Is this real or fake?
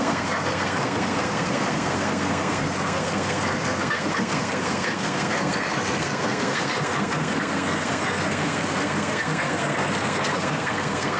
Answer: fake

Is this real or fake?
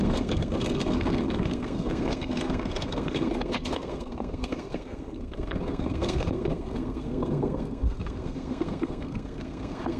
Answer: fake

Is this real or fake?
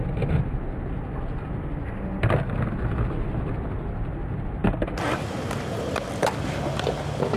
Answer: real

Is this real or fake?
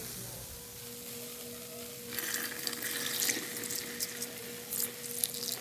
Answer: real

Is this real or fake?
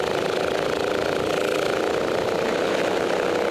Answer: real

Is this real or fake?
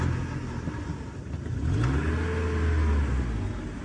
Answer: real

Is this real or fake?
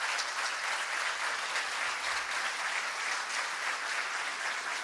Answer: real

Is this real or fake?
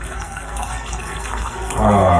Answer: fake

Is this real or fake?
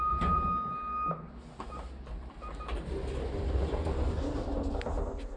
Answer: real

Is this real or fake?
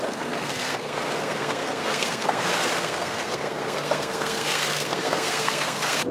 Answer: fake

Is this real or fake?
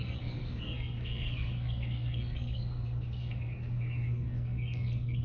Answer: fake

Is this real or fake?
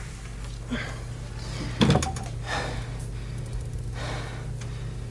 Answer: real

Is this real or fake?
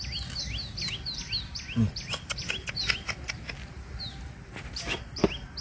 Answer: real